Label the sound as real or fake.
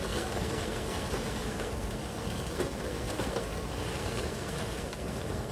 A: fake